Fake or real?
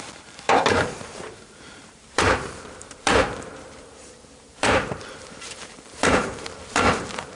fake